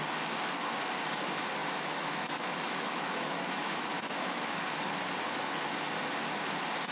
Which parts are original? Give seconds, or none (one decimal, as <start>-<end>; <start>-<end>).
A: 0.0-1.6; 4.6-6.9